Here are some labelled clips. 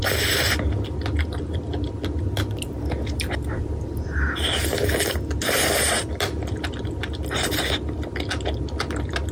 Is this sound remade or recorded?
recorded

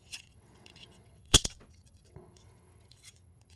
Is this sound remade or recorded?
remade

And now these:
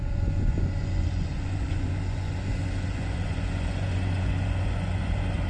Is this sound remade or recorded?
remade